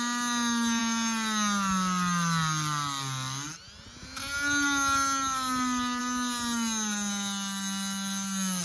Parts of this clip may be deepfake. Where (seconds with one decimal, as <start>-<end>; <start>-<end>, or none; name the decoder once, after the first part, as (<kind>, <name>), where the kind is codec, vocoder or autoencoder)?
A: none